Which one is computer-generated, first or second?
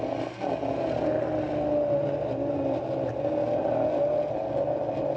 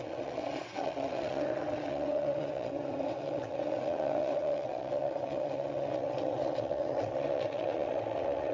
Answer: second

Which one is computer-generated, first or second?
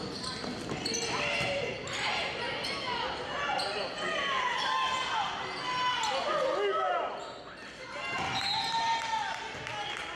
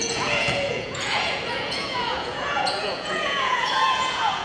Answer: second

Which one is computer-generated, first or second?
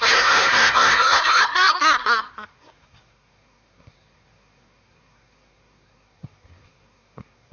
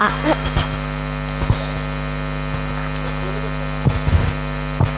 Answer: first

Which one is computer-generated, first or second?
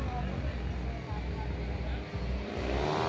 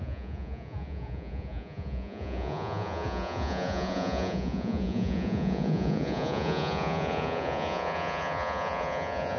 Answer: second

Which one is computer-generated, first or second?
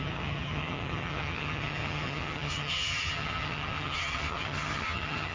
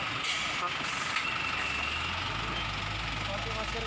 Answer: first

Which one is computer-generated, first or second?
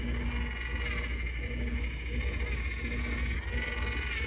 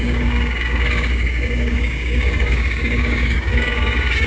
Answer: second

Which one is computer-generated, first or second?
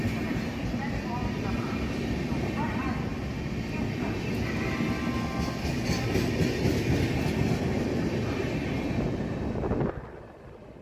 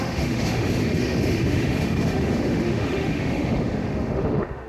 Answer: second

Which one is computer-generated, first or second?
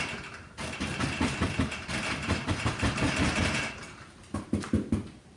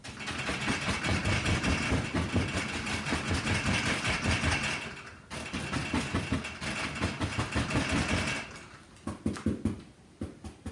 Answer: first